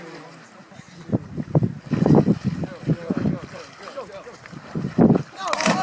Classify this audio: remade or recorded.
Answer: recorded